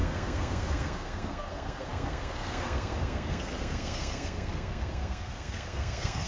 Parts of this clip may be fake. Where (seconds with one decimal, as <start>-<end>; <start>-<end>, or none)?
0.0-6.3